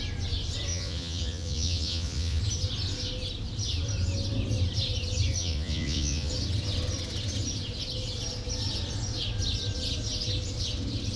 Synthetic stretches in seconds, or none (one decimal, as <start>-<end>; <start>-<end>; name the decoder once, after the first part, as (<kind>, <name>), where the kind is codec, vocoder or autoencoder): 0.7-2.4 (vocoder, Vocos); 5.4-6.3